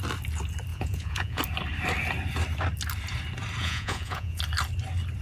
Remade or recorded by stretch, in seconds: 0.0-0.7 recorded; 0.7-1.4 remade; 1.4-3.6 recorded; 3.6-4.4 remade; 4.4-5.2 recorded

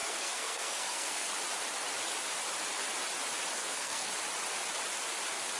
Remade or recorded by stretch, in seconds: 0.0-1.3 remade; 1.3-3.6 recorded; 3.6-4.1 remade; 4.1-5.6 recorded

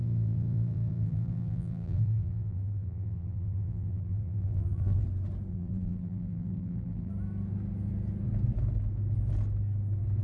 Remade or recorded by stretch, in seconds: 0.0-5.0 remade; 5.0-5.5 recorded; 5.5-7.1 remade; 7.1-10.2 recorded

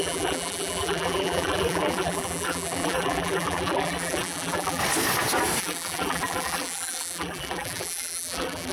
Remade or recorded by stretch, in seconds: 0.0-4.8 remade; 4.8-5.6 recorded; 5.6-8.7 remade

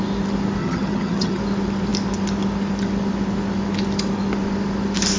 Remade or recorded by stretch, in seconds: 0.0-0.6 recorded; 0.6-1.4 remade; 1.4-5.2 recorded